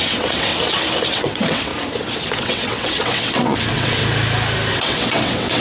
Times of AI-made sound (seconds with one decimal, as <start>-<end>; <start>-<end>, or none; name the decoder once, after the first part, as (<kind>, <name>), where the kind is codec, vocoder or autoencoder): 0.0-0.5 (vocoder, WaveNeXt); 1.1-1.7; 2.4-4.0; 4.7-5.6